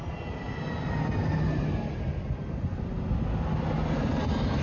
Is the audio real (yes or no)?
yes